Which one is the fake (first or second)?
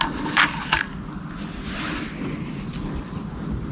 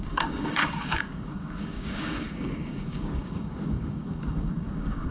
second